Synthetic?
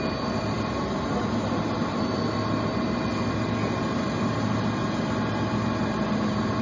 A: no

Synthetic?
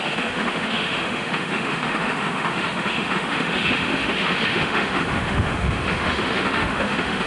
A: yes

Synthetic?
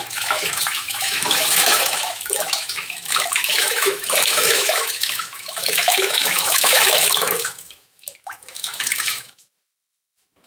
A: yes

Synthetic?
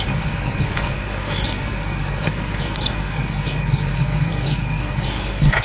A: yes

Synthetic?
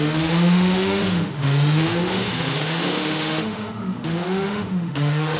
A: yes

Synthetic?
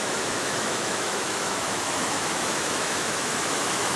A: yes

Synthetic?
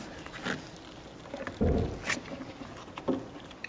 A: no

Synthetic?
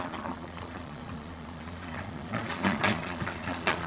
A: yes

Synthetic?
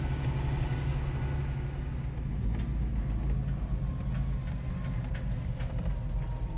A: no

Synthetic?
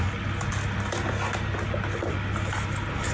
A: no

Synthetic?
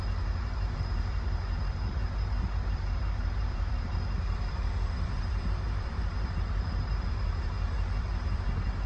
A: yes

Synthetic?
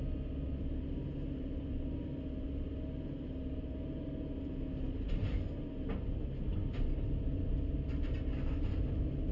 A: no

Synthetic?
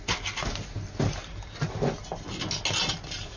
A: no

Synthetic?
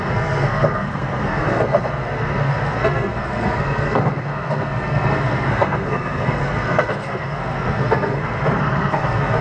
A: yes